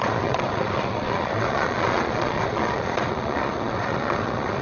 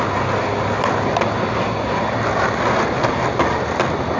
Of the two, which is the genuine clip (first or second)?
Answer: second